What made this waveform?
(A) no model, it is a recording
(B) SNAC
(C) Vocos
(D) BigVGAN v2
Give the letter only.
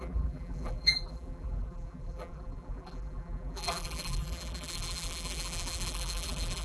D